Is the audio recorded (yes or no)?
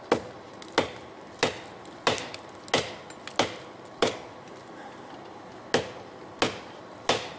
yes